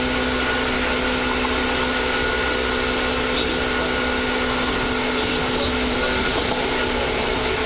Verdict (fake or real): real